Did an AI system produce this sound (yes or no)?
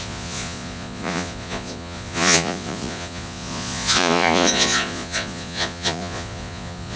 yes